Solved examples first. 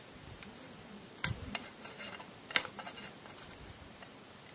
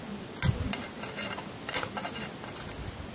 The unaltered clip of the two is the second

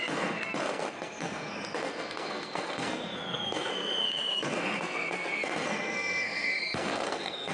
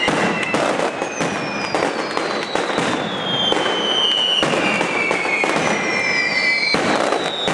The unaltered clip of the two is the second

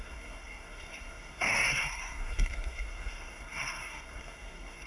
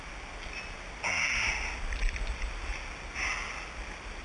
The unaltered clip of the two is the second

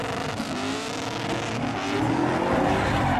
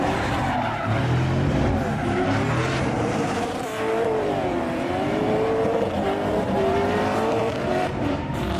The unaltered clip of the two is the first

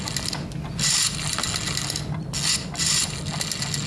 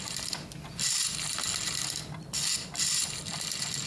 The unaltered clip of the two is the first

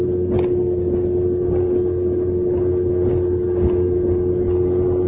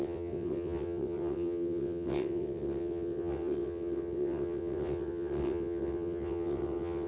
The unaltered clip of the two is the first